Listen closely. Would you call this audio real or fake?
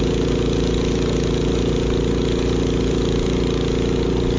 real